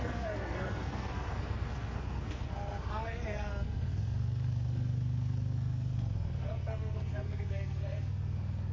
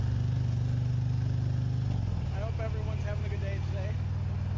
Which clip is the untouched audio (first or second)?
second